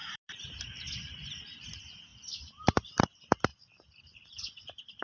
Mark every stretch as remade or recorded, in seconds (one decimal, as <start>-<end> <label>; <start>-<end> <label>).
0.0-0.6 remade; 0.6-2.1 recorded; 2.1-3.0 remade; 3.0-5.0 recorded